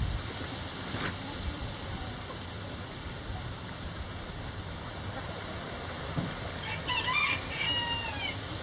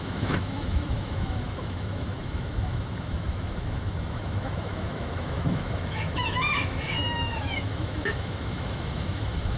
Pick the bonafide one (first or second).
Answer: first